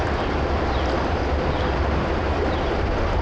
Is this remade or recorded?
recorded